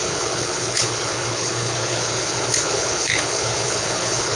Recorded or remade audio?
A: remade